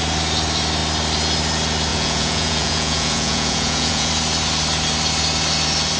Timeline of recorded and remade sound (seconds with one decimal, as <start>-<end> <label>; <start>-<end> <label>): 0.0-1.9 recorded; 1.9-4.1 remade; 4.1-6.0 recorded